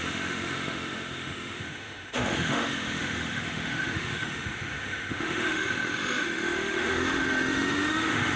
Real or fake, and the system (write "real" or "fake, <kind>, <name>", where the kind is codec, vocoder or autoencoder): fake, autoencoder, DAC-VAE